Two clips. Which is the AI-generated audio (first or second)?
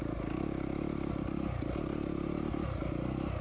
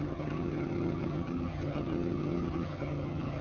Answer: second